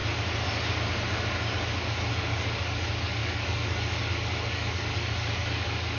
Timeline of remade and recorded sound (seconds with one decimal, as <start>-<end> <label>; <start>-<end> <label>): 0.0-2.1 recorded; 2.1-6.0 remade